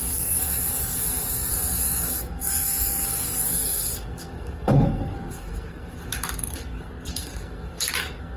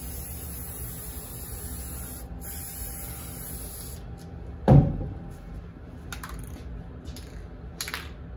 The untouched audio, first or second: second